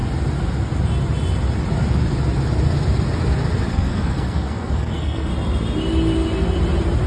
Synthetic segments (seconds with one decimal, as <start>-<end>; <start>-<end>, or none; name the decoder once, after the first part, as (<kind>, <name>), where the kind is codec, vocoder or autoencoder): 3.7-5.3 (codec, SNAC)